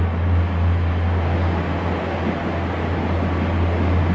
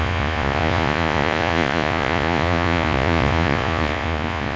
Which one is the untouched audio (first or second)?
first